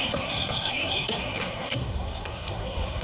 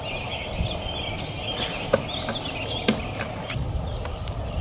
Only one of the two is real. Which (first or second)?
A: second